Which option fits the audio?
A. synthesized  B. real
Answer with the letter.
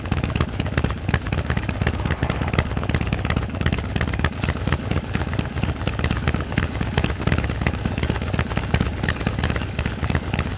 A